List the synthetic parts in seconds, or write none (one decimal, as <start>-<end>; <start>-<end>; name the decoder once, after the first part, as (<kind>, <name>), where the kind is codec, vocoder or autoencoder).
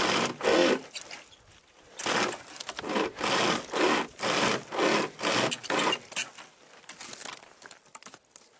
none